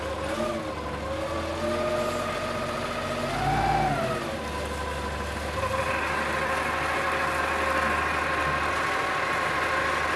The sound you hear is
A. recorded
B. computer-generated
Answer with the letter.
A